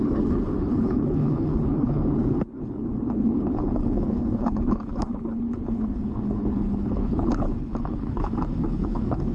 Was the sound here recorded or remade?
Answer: remade